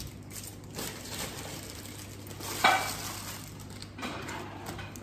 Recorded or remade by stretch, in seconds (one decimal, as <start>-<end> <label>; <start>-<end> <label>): 0.0-5.0 recorded

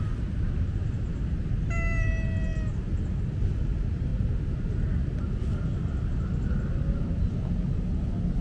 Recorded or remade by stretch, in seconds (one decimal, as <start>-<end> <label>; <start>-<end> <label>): 0.0-4.1 recorded; 4.1-5.5 remade; 5.5-8.4 recorded